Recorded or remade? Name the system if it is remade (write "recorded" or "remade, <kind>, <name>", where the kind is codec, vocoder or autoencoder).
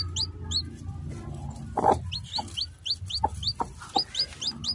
recorded